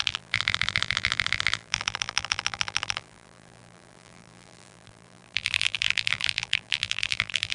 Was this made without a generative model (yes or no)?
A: no